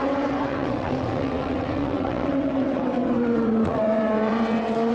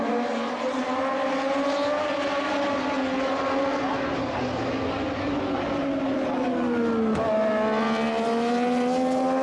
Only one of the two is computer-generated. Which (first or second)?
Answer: first